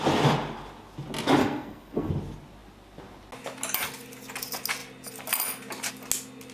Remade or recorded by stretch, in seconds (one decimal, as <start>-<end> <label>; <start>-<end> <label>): 0.0-1.4 recorded; 1.4-2.1 remade; 2.1-6.5 recorded